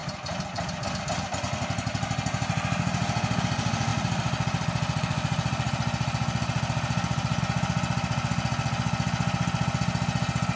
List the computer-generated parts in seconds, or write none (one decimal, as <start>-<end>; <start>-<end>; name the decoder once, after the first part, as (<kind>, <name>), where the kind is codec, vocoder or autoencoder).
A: 3.9-7.4 (vocoder, BigVGAN v2)